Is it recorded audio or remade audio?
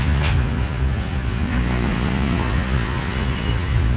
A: remade